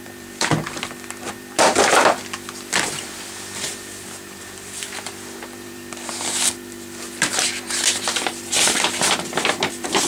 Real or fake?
fake